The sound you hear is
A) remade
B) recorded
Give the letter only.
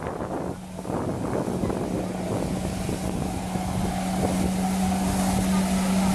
B